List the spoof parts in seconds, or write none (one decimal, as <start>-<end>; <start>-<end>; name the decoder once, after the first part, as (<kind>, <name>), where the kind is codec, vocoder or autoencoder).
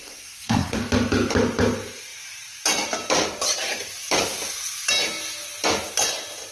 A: 0.0-0.8 (codec, SNAC)